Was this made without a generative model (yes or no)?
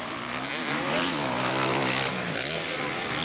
yes